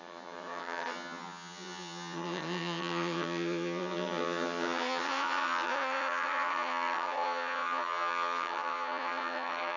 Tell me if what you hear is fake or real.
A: fake